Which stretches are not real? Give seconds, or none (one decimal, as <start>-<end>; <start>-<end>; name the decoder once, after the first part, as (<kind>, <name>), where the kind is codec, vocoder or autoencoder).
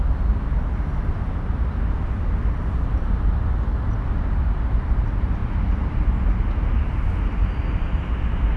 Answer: none